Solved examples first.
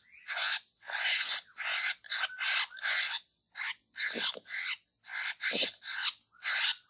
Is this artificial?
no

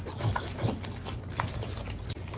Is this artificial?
no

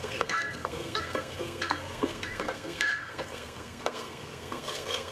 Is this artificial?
yes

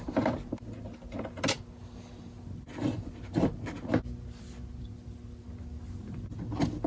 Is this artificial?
no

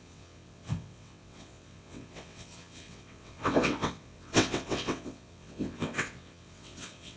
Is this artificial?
yes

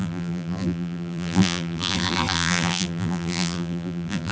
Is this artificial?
yes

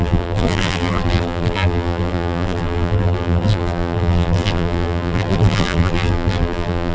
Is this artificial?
yes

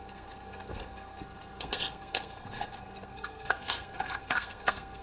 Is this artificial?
yes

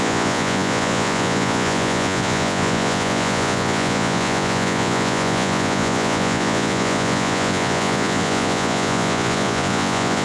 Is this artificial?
yes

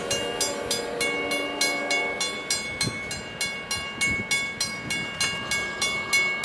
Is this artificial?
no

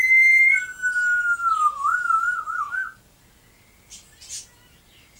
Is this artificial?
no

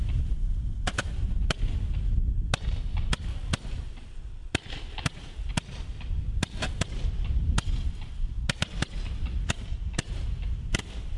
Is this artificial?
no